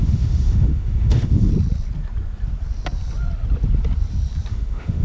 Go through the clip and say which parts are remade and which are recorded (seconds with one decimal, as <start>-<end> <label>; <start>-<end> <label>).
0.0-1.5 remade; 1.5-4.5 recorded; 4.5-5.0 remade